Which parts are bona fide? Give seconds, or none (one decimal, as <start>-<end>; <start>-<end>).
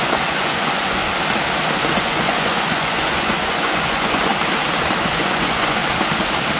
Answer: 1.0-1.9; 4.3-5.0; 5.8-6.6